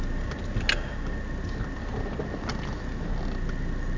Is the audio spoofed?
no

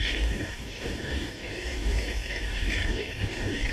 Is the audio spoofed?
yes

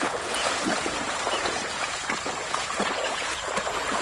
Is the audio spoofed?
yes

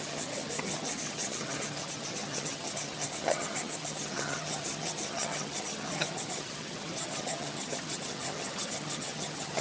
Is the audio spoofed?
yes